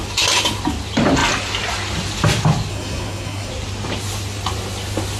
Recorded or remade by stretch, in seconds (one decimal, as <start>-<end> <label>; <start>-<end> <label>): 0.0-2.7 recorded; 2.7-3.5 remade; 3.5-5.2 recorded